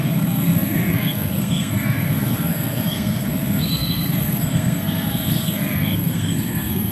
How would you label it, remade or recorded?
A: remade